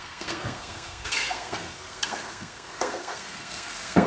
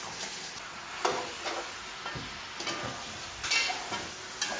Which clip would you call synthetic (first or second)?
first